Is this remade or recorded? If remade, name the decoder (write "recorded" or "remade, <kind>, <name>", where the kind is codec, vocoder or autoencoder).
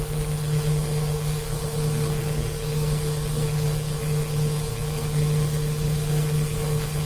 remade, codec, SNAC